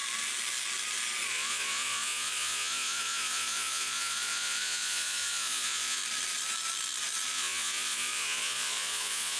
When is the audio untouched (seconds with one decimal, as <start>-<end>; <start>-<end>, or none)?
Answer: 0.0-1.3; 6.0-7.3